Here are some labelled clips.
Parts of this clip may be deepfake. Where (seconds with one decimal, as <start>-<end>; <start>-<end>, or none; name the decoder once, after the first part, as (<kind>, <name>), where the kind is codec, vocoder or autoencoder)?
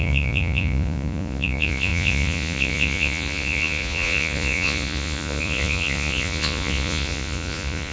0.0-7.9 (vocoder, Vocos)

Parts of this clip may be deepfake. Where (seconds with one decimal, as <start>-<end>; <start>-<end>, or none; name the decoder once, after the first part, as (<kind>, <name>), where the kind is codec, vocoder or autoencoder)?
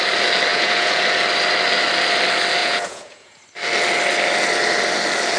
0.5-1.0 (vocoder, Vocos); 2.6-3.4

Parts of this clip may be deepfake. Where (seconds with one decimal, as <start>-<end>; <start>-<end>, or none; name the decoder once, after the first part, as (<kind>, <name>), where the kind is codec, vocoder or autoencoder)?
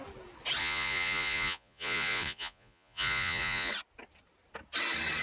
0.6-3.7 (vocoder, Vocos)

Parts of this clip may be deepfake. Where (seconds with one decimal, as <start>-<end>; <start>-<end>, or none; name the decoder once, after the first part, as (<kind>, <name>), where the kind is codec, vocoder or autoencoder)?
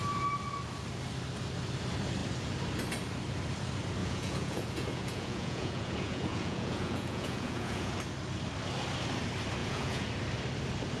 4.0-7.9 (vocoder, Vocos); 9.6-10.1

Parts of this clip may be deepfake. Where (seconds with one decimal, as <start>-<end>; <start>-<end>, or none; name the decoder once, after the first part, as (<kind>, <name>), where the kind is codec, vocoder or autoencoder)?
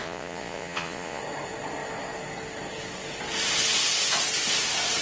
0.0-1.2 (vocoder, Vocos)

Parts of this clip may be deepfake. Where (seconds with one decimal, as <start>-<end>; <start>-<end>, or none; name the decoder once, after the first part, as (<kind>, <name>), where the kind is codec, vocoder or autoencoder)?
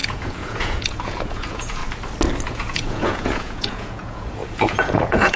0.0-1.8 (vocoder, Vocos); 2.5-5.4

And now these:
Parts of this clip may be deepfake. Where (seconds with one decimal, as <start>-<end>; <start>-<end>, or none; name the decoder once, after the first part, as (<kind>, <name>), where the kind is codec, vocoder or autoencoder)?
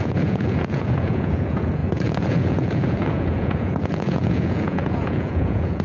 0.0-5.8 (vocoder, Vocos)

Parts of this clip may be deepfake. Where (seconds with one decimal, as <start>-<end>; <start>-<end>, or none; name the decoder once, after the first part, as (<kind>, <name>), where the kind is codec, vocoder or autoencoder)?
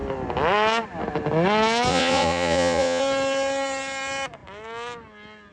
1.9-3.0 (vocoder, Vocos)